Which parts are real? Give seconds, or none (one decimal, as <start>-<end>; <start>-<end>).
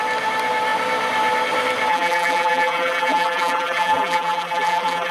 0.0-1.9